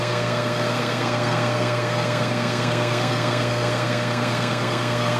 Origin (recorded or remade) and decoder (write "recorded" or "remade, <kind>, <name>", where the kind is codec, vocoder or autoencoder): remade, codec, SNAC